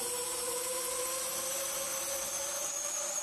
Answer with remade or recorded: recorded